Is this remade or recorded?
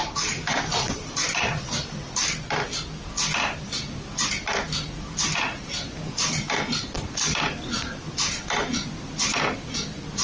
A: recorded